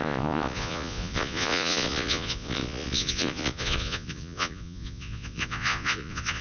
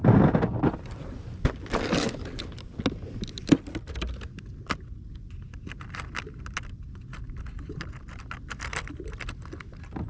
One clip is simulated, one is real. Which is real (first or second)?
second